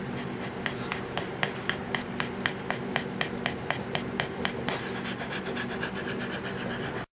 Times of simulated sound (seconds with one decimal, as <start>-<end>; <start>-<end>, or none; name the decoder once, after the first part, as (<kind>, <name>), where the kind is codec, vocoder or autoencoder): none